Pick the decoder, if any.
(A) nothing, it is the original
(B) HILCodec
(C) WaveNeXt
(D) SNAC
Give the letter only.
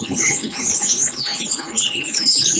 B